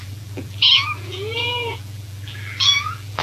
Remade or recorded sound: remade